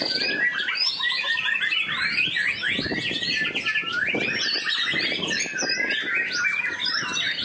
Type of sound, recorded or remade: recorded